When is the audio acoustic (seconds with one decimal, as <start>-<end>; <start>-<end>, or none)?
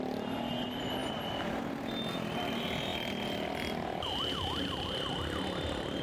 0.0-6.0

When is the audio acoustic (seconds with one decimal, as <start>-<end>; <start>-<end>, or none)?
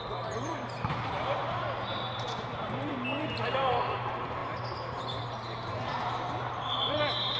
none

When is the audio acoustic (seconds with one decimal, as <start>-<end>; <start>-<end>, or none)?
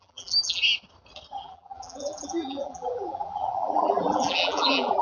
0.6-1.4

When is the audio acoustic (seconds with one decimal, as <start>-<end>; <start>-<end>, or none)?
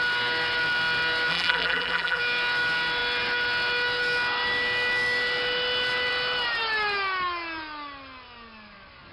0.0-1.3; 2.2-9.1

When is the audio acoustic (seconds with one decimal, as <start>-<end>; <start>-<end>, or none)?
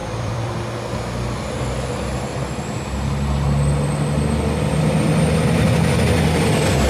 0.5-6.9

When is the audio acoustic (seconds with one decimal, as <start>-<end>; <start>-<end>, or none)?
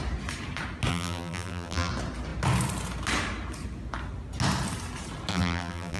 0.0-0.9; 1.9-5.3